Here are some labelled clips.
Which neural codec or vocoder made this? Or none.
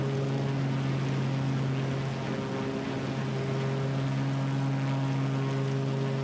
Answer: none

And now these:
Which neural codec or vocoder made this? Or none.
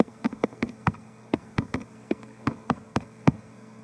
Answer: codec, SNAC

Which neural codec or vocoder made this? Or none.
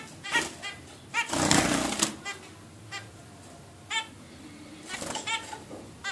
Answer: none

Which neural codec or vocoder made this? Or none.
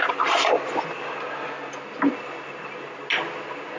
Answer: none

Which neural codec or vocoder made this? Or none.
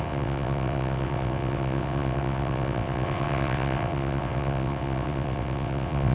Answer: vocoder, WaveNeXt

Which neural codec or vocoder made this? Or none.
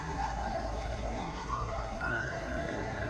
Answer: codec, SNAC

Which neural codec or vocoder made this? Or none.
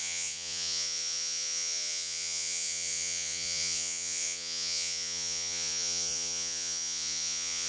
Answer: vocoder, Vocos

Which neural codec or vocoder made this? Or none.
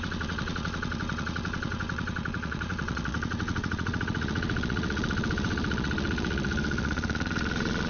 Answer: vocoder, Vocos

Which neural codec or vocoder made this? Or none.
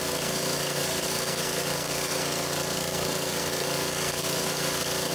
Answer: codec, SNAC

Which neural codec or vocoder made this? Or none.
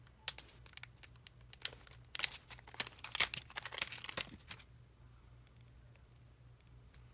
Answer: none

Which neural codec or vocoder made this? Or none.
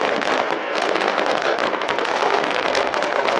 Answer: codec, SNAC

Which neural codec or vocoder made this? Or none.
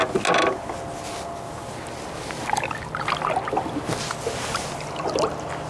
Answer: none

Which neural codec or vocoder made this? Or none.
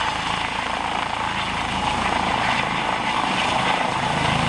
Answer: none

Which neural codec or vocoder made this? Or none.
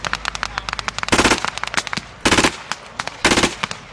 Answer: none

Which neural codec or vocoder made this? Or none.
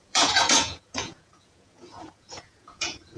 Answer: vocoder, Vocos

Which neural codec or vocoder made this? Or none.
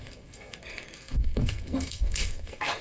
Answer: codec, SNAC